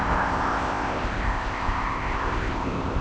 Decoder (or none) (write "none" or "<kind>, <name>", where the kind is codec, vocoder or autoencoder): codec, ZipCodec